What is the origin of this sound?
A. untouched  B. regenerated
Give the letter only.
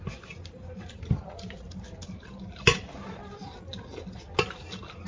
A